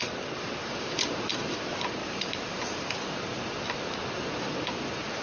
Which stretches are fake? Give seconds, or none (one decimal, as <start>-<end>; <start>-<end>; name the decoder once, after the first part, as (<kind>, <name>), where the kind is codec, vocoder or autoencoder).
0.6-1.6 (vocoder, BigVGAN v2); 2.0-3.0